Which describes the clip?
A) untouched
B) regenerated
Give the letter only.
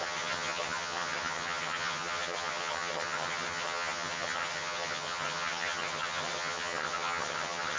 B